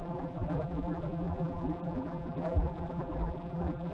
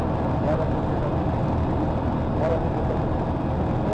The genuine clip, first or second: second